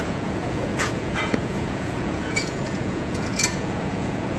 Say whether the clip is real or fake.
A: fake